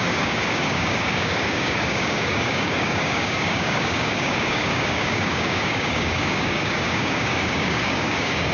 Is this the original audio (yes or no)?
no